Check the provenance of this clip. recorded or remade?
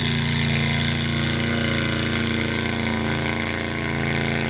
recorded